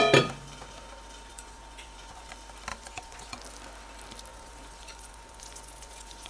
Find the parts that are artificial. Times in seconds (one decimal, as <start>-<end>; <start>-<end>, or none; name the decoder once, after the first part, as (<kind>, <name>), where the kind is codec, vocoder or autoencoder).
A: 1.3-2.3 (vocoder, Vocos); 2.7-3.4; 4.3-6.3